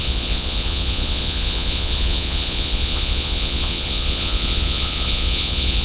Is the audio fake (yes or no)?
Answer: yes